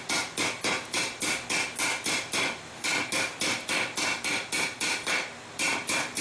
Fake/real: real